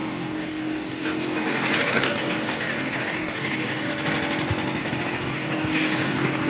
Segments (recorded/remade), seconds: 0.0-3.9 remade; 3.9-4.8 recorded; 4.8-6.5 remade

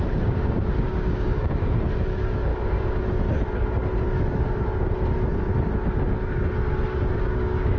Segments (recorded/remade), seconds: 0.0-2.5 remade; 2.5-7.0 recorded; 7.0-7.8 remade

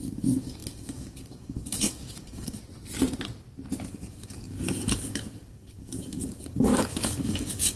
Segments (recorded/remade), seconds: 0.0-2.6 remade; 2.6-3.9 recorded; 3.9-7.8 remade

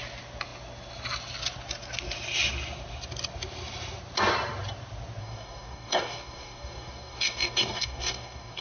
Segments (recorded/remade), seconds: 0.0-5.2 recorded; 5.2-8.6 remade

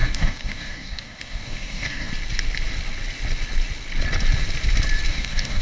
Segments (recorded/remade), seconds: 0.0-2.1 remade; 2.1-5.1 recorded; 5.1-5.6 remade